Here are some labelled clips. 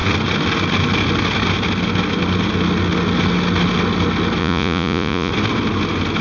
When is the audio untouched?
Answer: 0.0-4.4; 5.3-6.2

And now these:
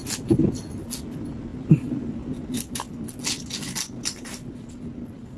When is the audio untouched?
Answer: 0.0-5.4

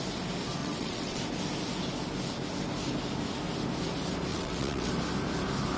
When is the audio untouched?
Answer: 0.0-0.6; 1.2-4.3; 4.9-5.8

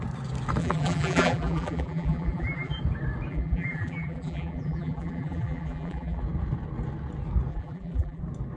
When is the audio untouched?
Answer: 0.0-0.6; 2.8-3.3; 6.2-7.5; 8.2-8.6